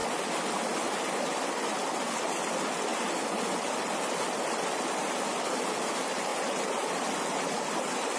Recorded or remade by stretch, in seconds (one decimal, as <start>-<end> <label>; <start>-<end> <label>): 0.0-8.2 recorded